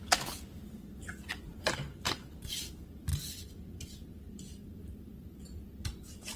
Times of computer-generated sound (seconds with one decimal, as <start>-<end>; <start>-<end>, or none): 1.5-2.7; 3.1-5.1